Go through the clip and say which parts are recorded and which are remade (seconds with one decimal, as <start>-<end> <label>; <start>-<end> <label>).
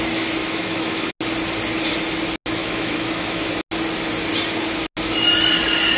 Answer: 0.0-0.4 recorded; 0.4-1.1 remade; 1.1-2.6 recorded; 2.6-3.4 remade; 3.4-6.0 recorded